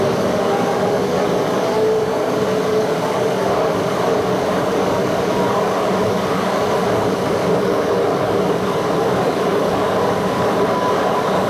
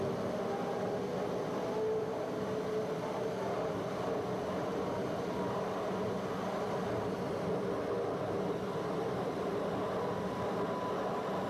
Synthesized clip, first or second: first